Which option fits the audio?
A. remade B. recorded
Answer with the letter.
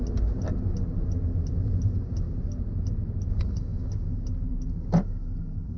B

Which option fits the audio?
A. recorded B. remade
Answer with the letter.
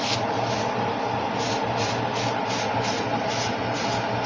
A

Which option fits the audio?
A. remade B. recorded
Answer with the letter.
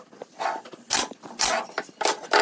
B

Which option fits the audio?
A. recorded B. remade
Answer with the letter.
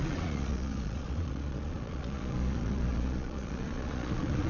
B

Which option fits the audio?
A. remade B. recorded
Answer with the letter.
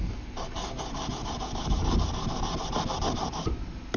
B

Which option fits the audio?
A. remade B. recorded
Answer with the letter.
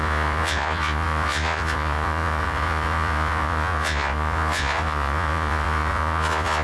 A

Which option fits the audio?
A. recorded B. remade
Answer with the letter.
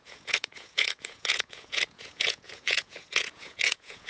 B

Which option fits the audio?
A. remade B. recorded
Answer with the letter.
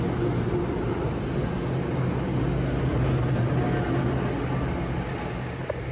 B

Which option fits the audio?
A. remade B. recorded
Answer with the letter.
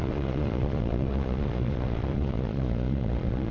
A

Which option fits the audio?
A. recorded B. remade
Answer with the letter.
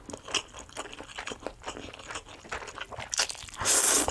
A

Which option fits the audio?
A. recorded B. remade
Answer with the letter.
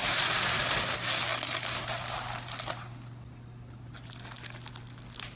A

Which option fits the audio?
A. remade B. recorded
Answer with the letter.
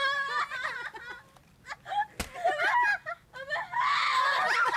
B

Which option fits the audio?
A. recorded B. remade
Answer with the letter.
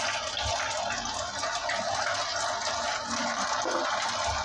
A